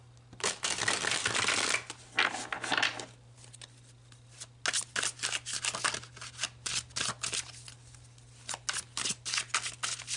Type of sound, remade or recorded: recorded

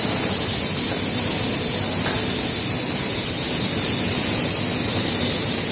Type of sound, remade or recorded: recorded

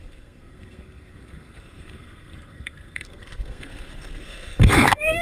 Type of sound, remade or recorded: remade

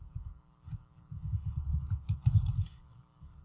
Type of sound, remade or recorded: recorded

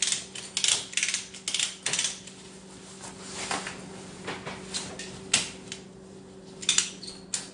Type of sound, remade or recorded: recorded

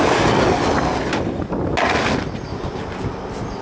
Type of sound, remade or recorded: recorded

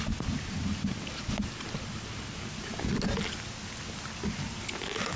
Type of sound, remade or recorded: recorded